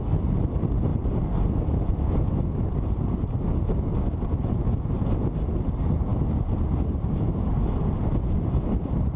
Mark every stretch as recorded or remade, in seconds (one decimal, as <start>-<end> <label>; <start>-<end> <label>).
0.0-9.2 recorded

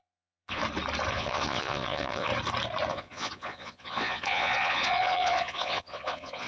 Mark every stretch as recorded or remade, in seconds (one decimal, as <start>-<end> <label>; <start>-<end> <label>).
0.0-0.6 remade; 0.6-1.1 recorded; 1.1-2.3 remade; 2.3-2.9 recorded; 2.9-6.5 remade

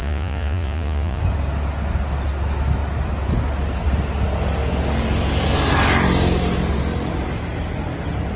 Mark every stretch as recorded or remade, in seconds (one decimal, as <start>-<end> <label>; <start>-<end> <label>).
0.0-1.2 remade; 1.2-8.4 recorded